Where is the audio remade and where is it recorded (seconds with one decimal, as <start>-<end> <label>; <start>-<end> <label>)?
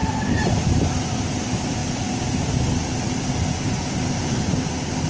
0.0-1.4 remade; 1.4-5.1 recorded